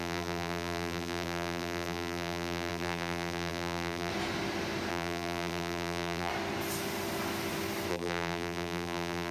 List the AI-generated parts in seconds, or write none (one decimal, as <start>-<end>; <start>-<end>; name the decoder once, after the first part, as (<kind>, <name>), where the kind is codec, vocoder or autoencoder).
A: 0.0-4.1 (vocoder, BigVGAN v2); 4.9-6.3; 7.9-9.3